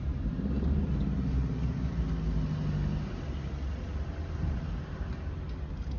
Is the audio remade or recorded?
recorded